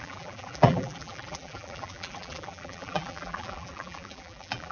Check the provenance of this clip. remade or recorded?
remade